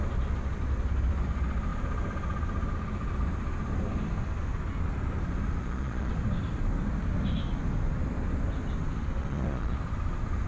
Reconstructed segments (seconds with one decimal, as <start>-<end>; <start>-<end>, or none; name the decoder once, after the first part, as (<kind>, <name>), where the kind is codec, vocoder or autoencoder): 5.6-6.1 (vocoder, Vocos); 9.2-9.8